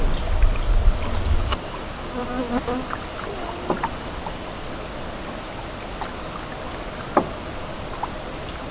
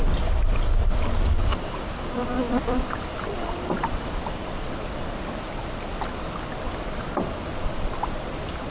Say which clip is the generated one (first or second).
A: second